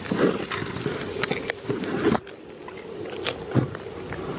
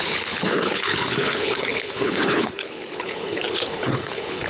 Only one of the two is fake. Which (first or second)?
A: second